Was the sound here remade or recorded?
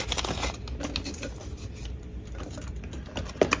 recorded